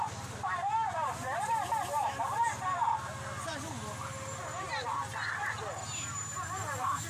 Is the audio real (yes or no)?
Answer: yes